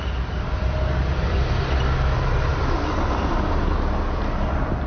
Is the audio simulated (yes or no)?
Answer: no